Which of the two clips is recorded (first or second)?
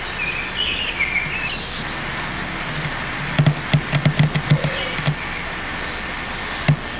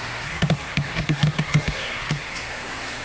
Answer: first